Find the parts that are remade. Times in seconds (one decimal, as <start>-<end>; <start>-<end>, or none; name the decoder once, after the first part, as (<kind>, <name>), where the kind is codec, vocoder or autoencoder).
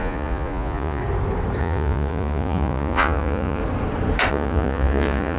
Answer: 0.0-1.0 (vocoder, Vocos); 1.6-3.6; 4.3-5.4